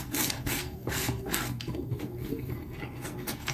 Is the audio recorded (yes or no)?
no